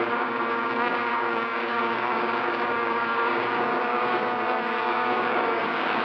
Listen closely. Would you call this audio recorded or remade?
remade